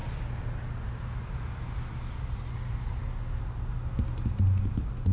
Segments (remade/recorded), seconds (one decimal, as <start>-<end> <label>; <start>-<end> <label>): 0.0-5.1 recorded